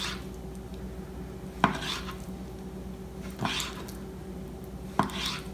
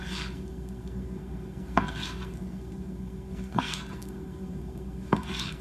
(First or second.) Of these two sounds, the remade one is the second